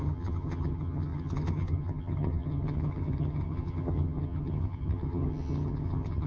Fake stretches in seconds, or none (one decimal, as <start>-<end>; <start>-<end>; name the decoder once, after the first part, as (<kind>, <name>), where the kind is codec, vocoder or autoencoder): 0.0-6.3 (vocoder, HiFi-GAN)